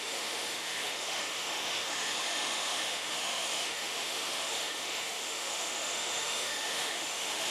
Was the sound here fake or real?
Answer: fake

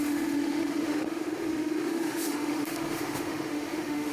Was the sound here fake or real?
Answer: fake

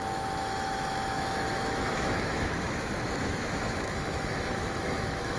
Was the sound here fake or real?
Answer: fake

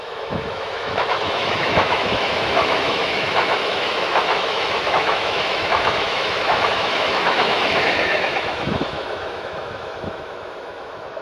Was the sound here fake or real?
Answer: fake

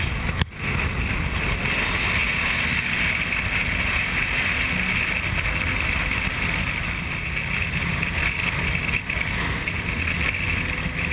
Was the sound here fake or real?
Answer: real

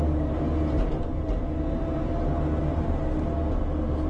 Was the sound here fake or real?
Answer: real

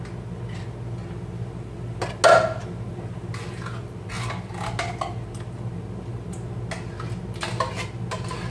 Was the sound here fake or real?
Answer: real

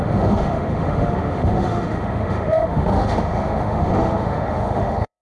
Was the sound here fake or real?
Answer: fake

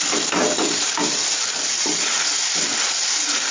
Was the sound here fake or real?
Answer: real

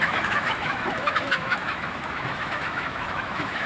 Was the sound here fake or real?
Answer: fake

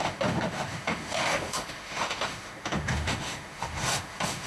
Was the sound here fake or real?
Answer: fake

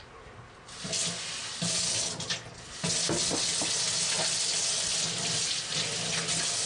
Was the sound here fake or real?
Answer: real